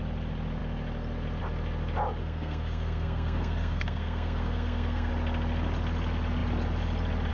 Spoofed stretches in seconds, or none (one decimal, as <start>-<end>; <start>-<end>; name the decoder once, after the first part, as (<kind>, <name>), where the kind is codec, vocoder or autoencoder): 2.2-5.1 (codec, SNAC)